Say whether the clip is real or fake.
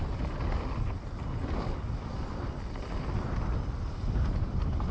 fake